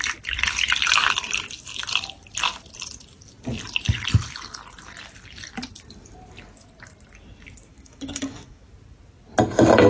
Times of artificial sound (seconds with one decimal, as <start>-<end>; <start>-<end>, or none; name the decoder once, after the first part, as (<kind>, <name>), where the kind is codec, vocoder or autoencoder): 7.7-8.6 (codec, DAC)